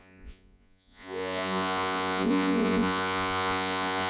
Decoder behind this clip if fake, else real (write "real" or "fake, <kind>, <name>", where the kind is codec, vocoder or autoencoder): fake, vocoder, Vocos